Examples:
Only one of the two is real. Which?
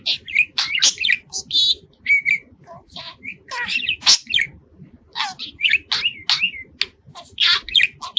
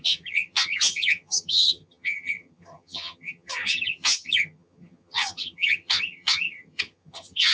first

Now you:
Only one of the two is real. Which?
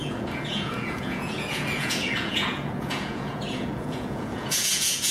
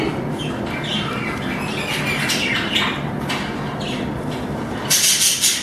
second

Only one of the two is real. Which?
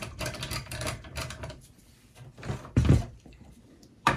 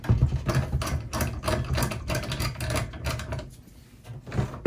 second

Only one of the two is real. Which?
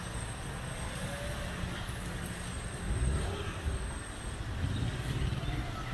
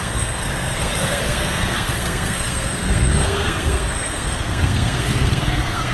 first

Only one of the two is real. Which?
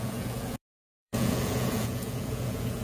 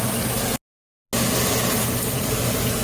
second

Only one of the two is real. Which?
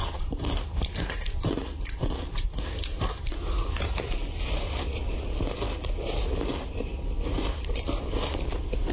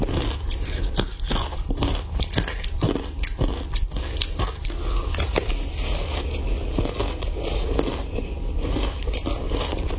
second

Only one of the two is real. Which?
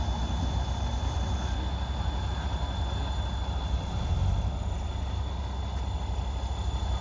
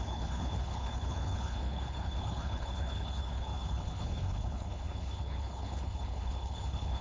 first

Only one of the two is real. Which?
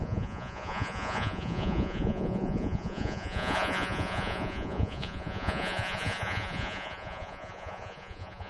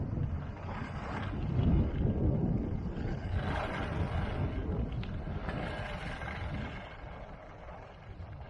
second